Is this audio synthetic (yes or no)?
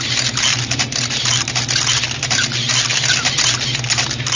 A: no